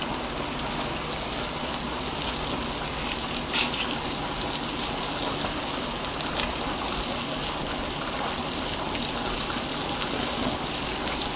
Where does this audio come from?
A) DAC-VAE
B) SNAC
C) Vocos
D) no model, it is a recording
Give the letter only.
D